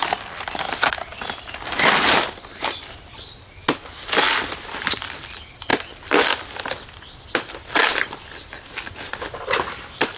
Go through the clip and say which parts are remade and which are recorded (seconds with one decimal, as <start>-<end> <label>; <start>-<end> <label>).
0.0-10.2 recorded